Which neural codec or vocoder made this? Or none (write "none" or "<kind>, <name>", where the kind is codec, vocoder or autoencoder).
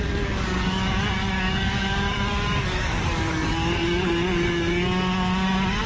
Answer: codec, DAC